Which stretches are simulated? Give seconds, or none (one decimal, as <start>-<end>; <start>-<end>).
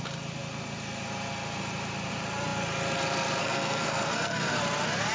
3.4-4.6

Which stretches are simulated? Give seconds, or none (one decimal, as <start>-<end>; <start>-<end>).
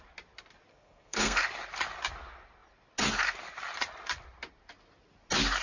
0.7-1.4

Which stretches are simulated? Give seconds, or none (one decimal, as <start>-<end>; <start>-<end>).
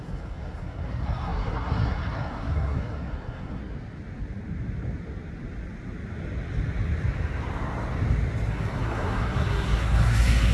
0.0-3.6; 8.5-10.5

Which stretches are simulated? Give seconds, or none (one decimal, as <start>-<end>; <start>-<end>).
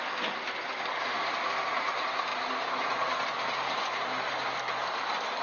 none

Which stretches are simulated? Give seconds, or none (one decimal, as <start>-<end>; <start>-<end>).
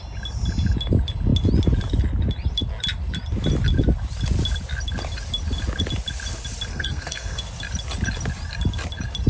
6.7-7.4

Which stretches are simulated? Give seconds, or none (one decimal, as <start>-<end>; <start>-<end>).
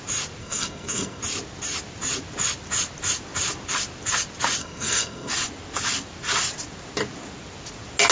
0.4-1.2; 4.6-5.3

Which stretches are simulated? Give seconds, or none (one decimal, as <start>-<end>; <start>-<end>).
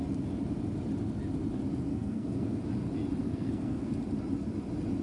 1.9-2.6; 3.2-3.9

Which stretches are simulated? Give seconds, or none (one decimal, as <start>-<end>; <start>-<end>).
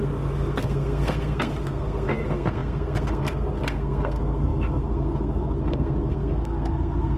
0.0-7.2